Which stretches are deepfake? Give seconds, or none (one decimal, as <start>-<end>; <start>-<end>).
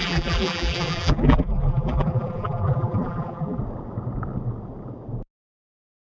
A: 0.0-3.6